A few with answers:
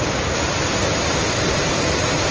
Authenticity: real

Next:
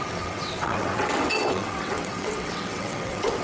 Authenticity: fake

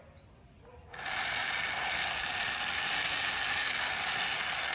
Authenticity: real